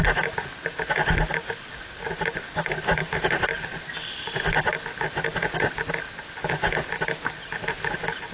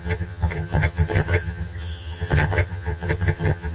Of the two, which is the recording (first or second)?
first